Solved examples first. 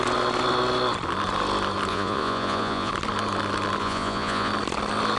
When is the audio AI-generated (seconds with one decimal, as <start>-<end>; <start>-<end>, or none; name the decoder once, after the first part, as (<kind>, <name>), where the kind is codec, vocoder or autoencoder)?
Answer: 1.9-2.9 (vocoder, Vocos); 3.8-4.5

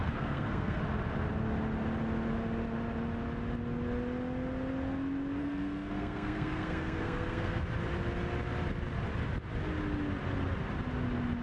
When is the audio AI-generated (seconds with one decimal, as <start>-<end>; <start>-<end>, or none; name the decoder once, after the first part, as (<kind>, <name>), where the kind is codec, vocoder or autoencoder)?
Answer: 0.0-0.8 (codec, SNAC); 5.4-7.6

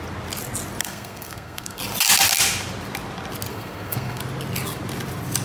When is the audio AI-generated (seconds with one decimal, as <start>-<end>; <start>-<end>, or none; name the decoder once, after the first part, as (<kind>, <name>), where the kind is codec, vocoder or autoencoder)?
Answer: 0.8-1.8 (codec, SNAC); 3.5-4.2